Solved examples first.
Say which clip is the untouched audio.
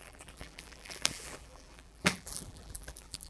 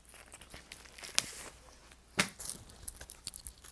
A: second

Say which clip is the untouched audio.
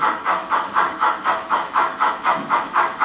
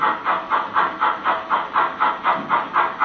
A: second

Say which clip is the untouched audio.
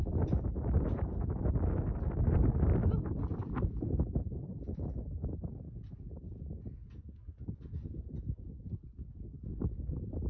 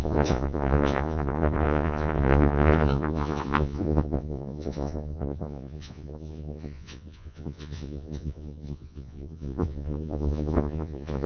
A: first